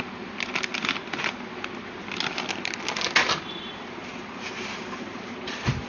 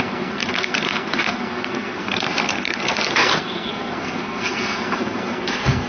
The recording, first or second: first